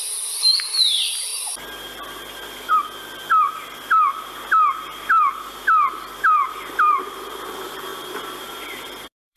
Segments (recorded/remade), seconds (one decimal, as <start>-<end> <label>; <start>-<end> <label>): 0.0-1.3 remade; 1.3-6.5 recorded; 6.5-9.4 remade